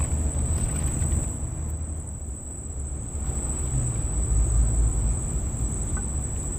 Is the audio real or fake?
real